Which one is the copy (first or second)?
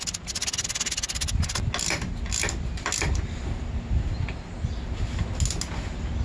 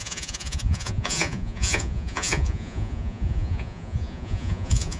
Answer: second